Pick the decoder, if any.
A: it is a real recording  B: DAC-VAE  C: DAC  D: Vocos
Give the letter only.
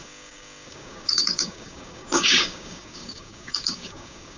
C